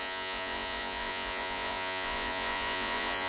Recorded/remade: remade